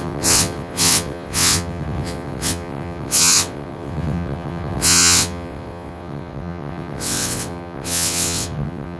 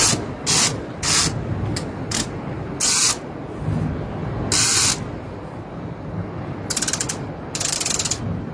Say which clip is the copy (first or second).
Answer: first